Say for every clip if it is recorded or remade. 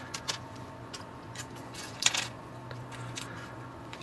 remade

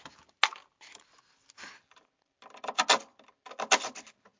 recorded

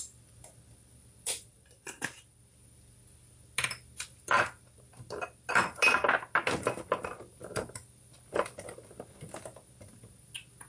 recorded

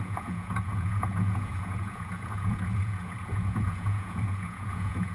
remade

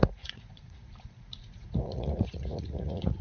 remade